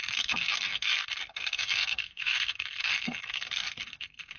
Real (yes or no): no